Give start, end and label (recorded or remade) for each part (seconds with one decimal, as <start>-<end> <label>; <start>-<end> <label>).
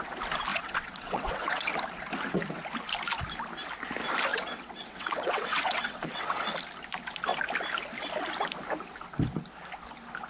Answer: 0.0-0.5 recorded; 0.5-1.7 remade; 1.7-4.3 recorded; 4.3-6.5 remade; 6.5-10.3 recorded